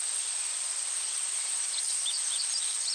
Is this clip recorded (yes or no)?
yes